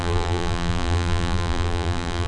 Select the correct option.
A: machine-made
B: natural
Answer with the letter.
A